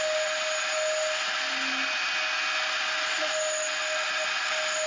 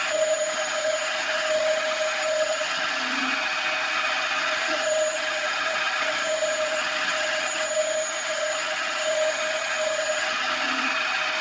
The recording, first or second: first